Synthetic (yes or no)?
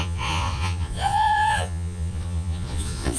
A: yes